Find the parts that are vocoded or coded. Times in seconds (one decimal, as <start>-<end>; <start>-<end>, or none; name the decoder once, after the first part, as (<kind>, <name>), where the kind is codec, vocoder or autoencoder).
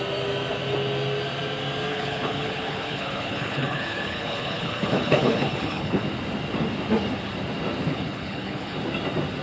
1.9-6.0 (codec, HILCodec); 7.9-8.8